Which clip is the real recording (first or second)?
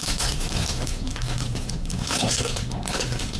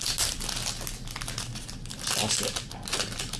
second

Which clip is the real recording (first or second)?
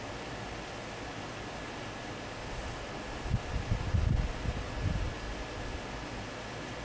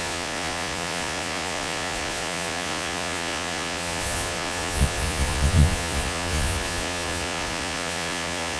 first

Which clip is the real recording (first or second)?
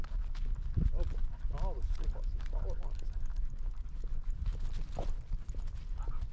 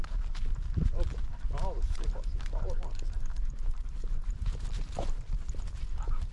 first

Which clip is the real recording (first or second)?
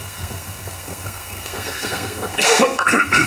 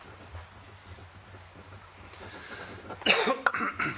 second